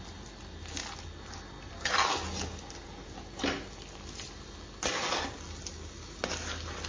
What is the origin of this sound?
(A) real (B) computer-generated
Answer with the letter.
A